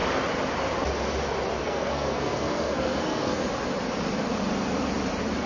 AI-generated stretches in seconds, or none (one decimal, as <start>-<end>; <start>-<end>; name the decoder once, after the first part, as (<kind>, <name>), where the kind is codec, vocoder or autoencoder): 1.6-3.4 (codec, SNAC)

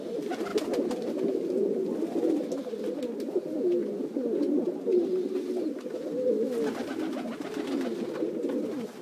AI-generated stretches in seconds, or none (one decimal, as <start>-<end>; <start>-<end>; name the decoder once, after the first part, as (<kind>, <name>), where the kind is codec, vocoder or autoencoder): none

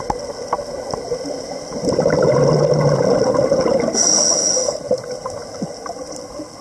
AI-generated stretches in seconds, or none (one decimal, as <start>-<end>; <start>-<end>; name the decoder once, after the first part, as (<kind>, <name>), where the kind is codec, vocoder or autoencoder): none

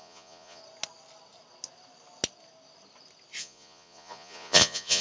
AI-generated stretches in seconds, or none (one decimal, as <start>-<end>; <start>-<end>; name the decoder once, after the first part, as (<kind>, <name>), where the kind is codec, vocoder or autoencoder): 0.0-0.6 (vocoder, Vocos); 3.4-5.0

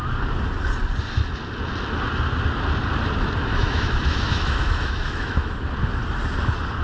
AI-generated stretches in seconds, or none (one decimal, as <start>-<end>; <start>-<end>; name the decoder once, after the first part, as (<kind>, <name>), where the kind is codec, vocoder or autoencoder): 3.5-5.5 (autoencoder, DAC-VAE)

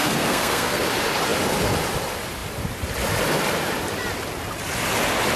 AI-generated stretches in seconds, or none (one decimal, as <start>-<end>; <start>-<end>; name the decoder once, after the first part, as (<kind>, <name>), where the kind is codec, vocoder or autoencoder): 0.0-0.9 (codec, SNAC)

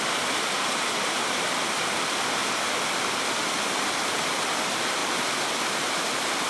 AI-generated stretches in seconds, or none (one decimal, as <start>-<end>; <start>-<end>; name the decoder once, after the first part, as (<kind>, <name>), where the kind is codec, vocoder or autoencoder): 0.0-5.0 (vocoder, BigVGAN v2); 5.8-6.5

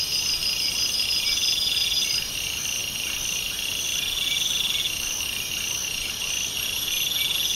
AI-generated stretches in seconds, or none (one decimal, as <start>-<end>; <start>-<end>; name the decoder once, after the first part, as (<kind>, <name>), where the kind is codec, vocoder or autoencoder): none